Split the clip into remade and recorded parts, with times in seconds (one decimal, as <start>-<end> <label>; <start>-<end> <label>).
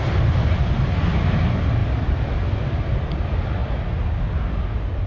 0.0-1.8 recorded; 1.8-2.3 remade; 2.3-5.1 recorded